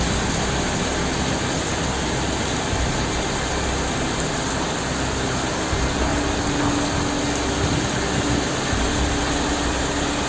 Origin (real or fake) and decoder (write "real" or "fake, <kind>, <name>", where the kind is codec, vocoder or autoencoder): real